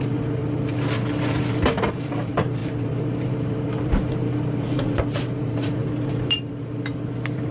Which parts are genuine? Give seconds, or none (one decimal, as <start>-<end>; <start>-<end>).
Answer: 0.4-1.9